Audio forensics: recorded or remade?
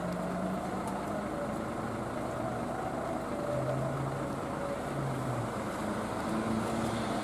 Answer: recorded